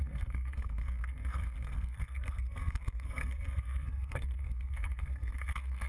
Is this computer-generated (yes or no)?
yes